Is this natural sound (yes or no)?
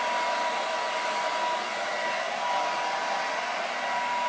yes